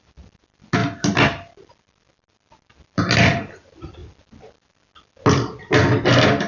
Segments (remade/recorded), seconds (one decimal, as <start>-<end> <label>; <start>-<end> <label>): 0.0-6.5 recorded